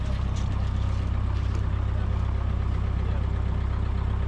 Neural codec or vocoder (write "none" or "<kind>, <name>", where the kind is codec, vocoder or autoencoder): none